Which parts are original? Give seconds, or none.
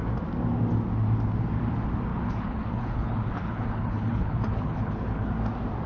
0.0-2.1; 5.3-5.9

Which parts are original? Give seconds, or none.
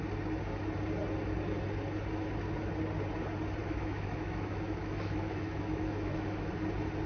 0.0-3.6; 6.5-7.1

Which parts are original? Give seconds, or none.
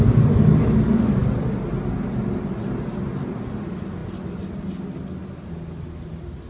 0.0-6.5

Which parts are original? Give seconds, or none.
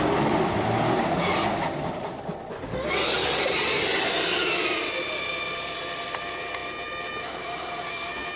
0.0-8.4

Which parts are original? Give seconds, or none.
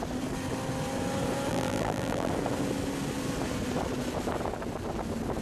0.0-1.5; 2.3-5.4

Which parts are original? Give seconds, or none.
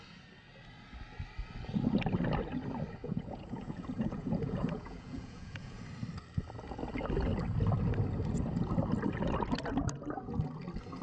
0.0-3.0; 5.8-11.0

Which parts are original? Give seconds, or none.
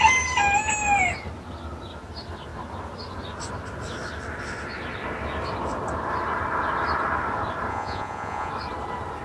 0.0-7.7; 8.5-9.2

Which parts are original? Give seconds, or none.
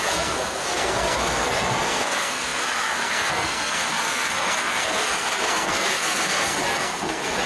none